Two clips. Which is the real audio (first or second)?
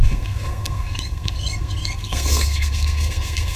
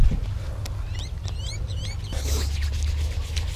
second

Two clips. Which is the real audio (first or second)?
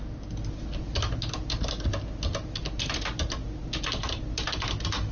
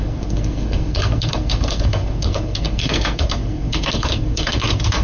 first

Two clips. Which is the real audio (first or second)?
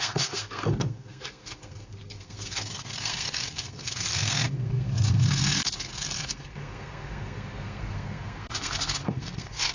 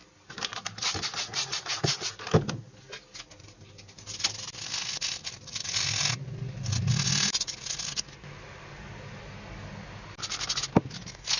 second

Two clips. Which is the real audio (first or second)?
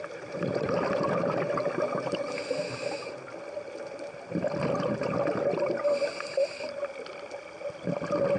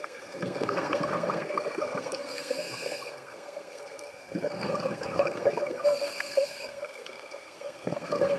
first